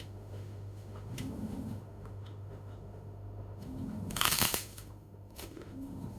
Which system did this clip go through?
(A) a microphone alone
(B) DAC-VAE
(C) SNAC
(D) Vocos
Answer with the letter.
B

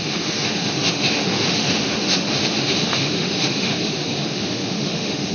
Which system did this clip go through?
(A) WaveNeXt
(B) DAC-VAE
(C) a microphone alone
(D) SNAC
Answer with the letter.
B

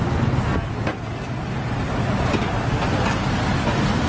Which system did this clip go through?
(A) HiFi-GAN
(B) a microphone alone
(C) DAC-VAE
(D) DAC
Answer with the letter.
B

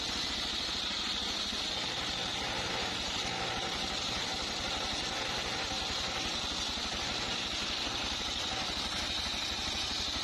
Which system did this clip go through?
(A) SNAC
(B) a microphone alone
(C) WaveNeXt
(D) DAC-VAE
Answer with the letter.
B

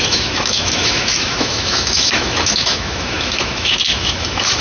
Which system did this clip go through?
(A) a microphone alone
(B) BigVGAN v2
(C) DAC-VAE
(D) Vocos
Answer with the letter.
C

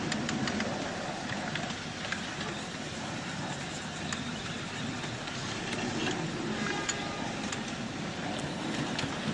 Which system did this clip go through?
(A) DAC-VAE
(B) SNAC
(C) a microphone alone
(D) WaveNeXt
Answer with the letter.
C